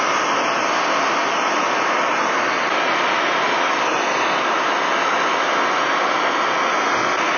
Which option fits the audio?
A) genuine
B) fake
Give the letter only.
A